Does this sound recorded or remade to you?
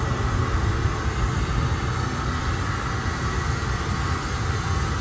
recorded